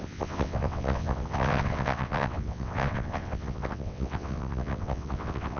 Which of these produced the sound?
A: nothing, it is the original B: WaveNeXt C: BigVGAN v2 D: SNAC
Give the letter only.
B